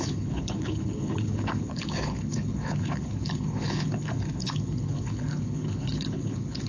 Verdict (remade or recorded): remade